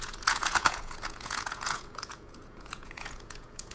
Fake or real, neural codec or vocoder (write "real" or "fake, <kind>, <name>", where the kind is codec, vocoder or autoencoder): fake, vocoder, Vocos